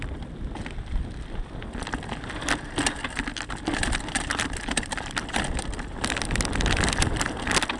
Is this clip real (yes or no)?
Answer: yes